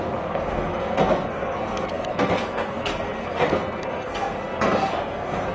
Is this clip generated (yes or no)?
yes